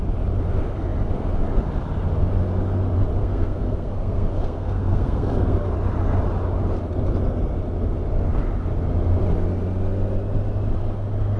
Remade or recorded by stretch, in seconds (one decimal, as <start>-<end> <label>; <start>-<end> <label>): 0.0-3.2 recorded; 3.2-5.7 remade; 5.7-11.4 recorded